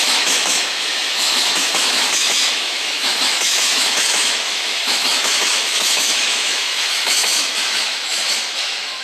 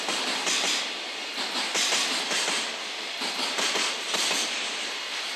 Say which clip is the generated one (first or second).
first